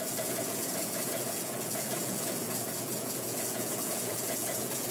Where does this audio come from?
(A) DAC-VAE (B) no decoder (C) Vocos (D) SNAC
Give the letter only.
C